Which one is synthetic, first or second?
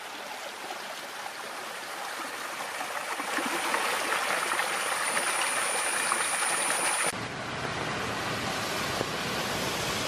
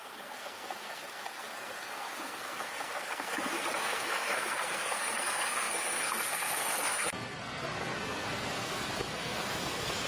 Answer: second